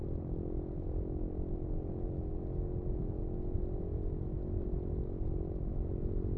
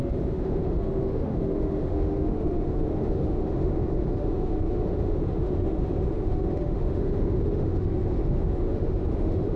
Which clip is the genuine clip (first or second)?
first